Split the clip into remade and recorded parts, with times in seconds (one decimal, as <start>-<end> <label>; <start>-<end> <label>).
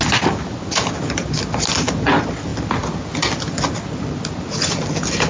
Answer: 0.0-5.3 recorded